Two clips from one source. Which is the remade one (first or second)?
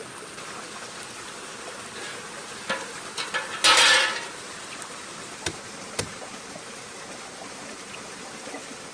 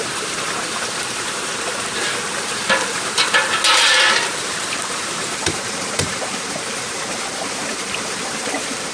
second